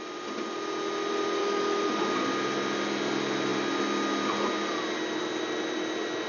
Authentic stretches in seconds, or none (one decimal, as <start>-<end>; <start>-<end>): 0.0-1.4; 1.9-6.3